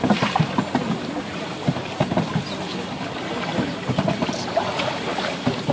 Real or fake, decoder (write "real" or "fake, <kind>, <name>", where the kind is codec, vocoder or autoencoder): real